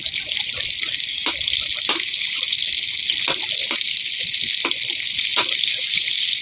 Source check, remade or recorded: recorded